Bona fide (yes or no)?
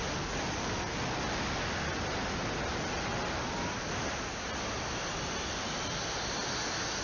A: yes